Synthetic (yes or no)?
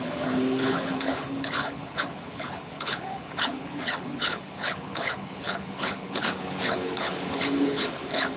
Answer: yes